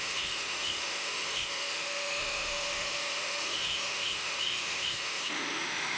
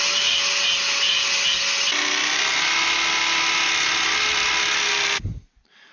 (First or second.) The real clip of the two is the second